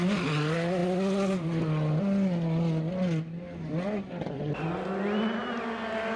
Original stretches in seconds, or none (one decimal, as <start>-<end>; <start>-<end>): 0.0-6.2